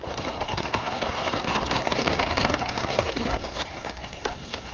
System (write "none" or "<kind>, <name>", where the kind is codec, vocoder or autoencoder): codec, SNAC